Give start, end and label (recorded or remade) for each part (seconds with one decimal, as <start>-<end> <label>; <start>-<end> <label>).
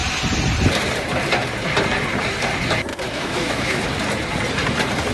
0.0-2.9 recorded; 2.9-3.8 remade; 3.8-5.1 recorded